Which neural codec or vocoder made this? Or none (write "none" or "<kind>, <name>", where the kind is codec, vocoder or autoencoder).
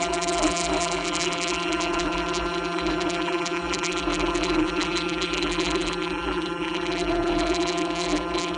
vocoder, BigVGAN v2